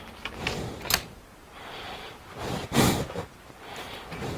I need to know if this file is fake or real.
real